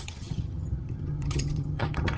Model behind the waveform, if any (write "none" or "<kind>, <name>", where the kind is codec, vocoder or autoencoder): vocoder, HiFi-GAN